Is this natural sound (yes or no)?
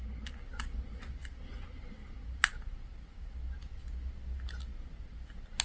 yes